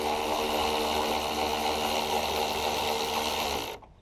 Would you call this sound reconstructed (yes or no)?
no